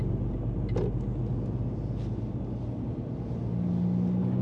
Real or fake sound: real